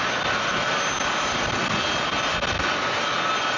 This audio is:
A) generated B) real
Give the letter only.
B